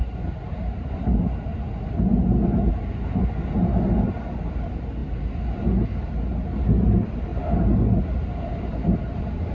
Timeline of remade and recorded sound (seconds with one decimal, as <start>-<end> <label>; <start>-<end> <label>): 0.0-0.9 remade; 0.9-9.5 recorded